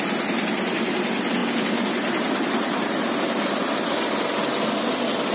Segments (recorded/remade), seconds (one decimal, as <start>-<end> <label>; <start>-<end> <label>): 0.0-5.3 recorded